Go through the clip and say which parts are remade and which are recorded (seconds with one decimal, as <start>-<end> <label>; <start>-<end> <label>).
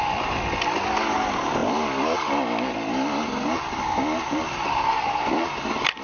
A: 0.0-6.0 recorded